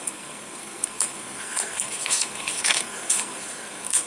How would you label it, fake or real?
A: fake